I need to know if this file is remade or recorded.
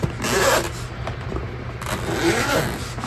recorded